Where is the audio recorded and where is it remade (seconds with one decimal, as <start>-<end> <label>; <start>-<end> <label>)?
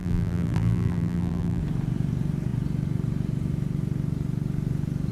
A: 0.0-1.6 remade; 1.6-5.1 recorded